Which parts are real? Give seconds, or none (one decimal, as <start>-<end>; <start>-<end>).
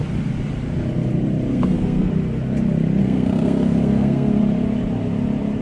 0.0-1.5; 2.1-3.0; 4.4-5.6